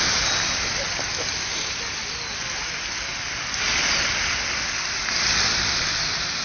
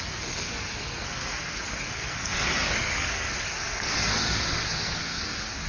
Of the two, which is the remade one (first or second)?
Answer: second